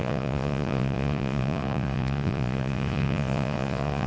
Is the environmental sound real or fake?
fake